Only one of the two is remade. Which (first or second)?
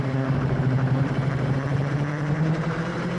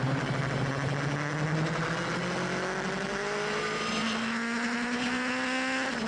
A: first